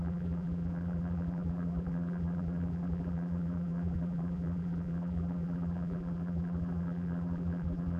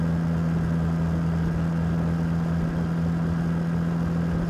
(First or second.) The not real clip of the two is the first